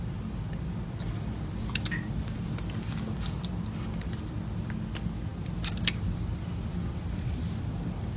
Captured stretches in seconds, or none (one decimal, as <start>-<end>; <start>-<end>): 0.0-8.2